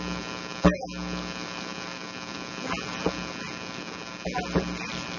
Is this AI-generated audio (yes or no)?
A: no